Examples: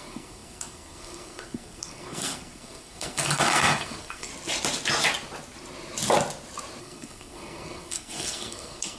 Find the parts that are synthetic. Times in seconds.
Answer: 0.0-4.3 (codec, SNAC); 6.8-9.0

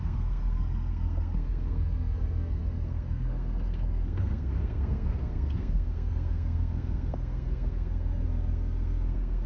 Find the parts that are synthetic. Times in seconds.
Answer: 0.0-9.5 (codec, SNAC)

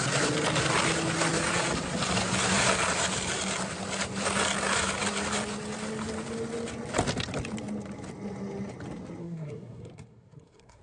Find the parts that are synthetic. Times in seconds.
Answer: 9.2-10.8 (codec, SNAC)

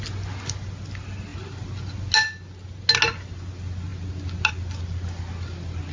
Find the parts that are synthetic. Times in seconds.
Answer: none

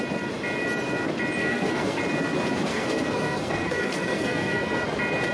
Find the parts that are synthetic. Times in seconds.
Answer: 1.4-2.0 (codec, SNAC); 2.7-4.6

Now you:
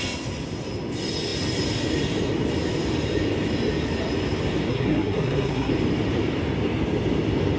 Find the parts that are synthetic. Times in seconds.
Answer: 4.7-5.7 (codec, SNAC)